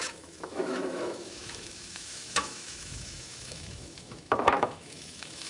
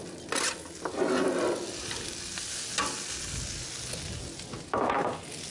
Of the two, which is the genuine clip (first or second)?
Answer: second